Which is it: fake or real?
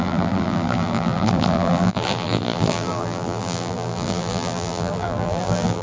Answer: fake